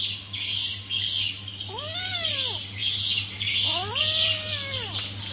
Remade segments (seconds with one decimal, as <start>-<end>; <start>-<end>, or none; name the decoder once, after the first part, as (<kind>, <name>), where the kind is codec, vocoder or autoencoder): none